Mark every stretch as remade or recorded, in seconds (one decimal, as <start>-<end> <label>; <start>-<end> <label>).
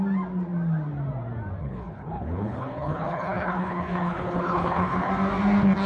0.0-1.6 recorded; 1.6-5.1 remade; 5.1-5.9 recorded